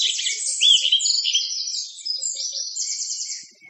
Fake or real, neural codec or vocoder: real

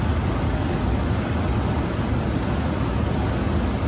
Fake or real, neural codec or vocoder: real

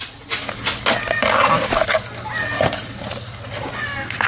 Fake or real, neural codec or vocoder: real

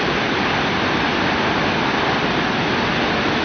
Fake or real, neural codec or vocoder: real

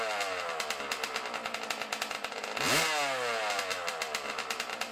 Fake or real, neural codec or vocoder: real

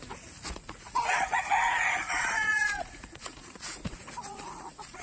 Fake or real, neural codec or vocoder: fake, vocoder, Vocos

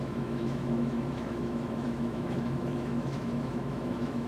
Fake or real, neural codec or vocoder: fake, autoencoder, DAC-VAE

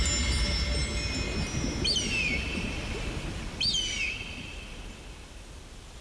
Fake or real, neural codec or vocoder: real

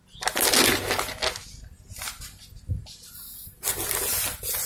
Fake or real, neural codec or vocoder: real